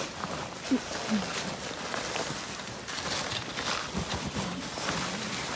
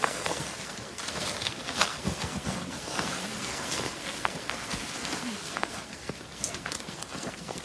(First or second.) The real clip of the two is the first